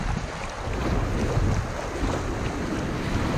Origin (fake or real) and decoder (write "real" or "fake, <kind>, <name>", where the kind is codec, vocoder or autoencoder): real